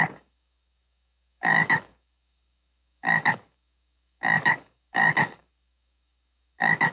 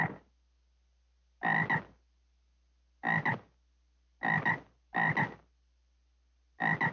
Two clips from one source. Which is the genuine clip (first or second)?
second